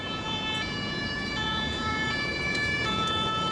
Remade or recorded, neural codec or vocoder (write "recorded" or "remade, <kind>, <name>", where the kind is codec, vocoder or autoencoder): remade, vocoder, Vocos